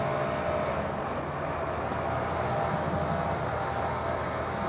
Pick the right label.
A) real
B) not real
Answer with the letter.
A